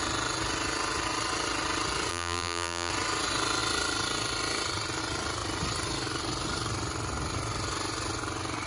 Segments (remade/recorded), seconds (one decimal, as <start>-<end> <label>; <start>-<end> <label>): 0.0-2.1 recorded; 2.1-2.9 remade; 2.9-8.7 recorded